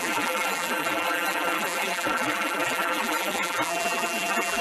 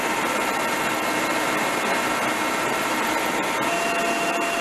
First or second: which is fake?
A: first